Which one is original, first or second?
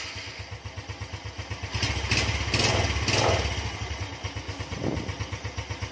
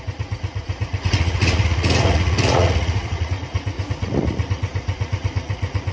first